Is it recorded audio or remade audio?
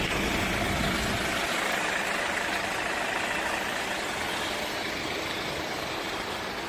recorded